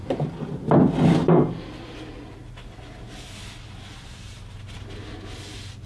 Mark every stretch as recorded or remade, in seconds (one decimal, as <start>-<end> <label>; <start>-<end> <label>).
0.0-5.9 recorded